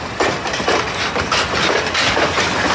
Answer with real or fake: real